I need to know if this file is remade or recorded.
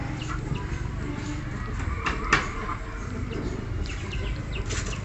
recorded